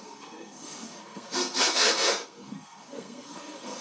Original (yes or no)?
no